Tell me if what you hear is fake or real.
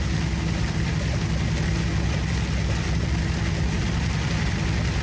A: real